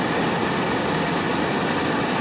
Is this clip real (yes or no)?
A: yes